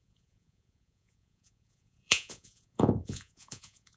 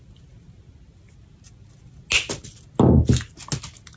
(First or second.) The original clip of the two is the second